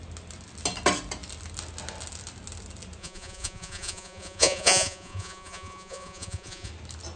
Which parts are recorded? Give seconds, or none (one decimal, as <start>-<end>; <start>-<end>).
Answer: 0.0-3.0; 6.7-7.2